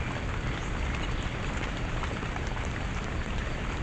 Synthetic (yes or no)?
no